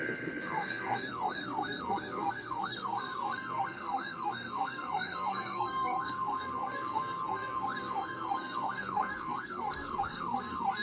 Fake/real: fake